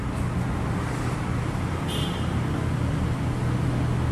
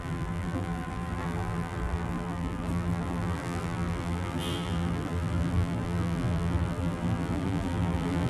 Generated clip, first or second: second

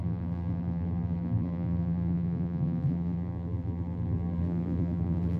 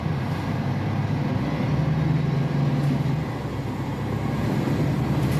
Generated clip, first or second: first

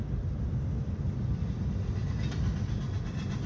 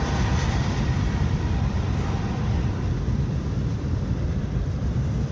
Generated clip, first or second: second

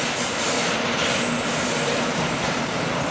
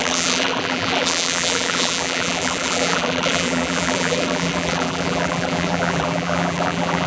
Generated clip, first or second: second